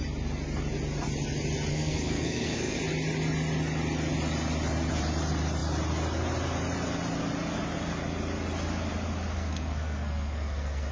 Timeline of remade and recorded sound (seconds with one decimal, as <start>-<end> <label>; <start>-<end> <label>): 0.0-1.7 recorded; 1.7-2.8 remade; 2.8-9.3 recorded; 9.3-10.9 remade